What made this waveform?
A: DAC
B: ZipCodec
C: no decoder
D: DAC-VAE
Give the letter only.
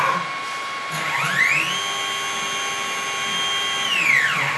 C